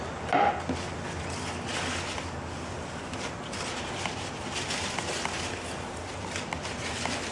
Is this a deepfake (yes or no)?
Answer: no